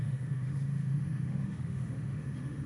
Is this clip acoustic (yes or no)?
no